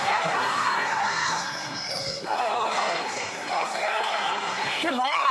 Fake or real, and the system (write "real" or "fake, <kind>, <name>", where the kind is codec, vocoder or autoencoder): fake, codec, SNAC